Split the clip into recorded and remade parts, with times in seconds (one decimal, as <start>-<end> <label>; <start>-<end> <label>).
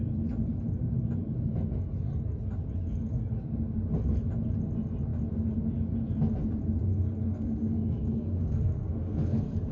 0.0-6.9 recorded; 6.9-9.7 remade